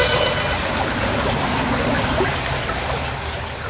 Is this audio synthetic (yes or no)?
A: no